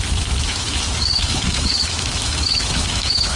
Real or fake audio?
fake